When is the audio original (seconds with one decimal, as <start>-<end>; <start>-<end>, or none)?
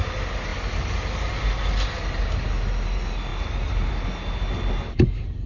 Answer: 0.0-5.5